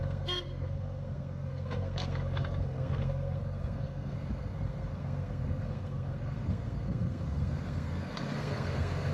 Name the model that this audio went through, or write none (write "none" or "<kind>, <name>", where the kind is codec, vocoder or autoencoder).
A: codec, SNAC